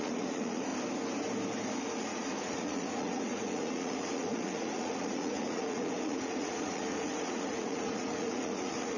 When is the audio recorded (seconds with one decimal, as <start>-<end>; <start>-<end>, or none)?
0.7-1.8